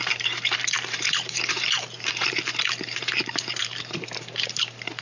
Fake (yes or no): yes